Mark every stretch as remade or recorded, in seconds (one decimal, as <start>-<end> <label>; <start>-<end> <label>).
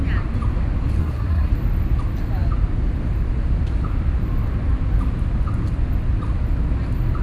0.0-1.0 recorded; 1.0-1.5 remade; 1.5-7.2 recorded